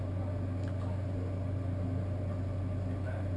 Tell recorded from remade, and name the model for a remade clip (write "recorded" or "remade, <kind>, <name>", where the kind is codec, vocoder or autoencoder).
recorded